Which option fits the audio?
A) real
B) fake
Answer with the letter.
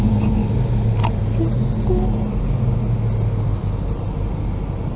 A